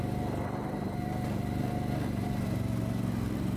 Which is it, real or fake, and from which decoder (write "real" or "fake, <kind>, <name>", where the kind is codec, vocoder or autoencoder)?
real